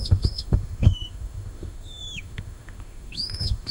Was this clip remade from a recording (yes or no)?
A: yes